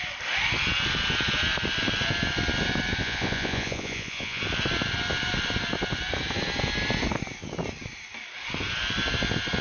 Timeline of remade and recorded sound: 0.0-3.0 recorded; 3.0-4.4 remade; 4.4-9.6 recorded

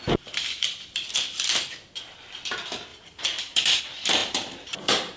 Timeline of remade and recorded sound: 0.0-2.9 recorded; 2.9-3.8 remade; 3.8-4.2 recorded; 4.2-5.2 remade

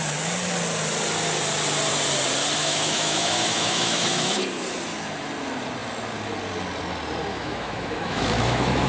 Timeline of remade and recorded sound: 0.0-2.6 recorded; 2.6-4.4 remade; 4.4-7.3 recorded; 7.3-8.9 remade

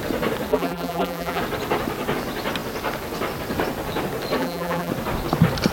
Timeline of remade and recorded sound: 0.0-0.5 recorded; 0.5-1.4 remade; 1.4-4.4 recorded; 4.4-4.9 remade; 4.9-5.7 recorded

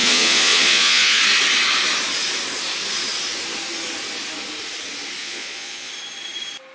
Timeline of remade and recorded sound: 0.0-1.2 remade; 1.2-5.2 recorded; 5.2-5.9 remade; 5.9-6.7 recorded

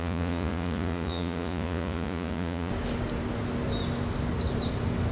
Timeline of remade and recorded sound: 0.0-2.7 remade; 2.7-5.1 recorded

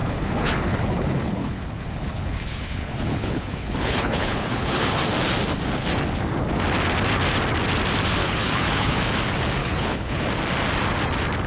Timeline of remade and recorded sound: 0.0-5.0 remade; 5.0-8.2 recorded; 8.2-9.0 remade; 9.0-9.6 recorded; 9.6-10.2 remade; 10.2-11.5 recorded